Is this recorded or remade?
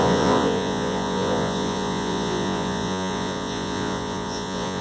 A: remade